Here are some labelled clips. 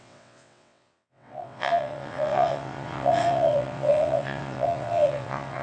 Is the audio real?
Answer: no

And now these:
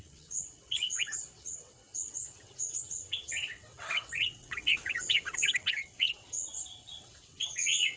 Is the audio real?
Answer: no